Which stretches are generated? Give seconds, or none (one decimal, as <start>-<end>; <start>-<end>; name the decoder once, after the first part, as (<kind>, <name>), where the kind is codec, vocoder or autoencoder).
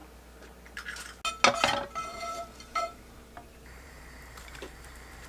2.1-5.3 (vocoder, BigVGAN v2)